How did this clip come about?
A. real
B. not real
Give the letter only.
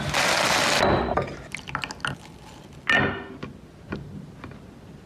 A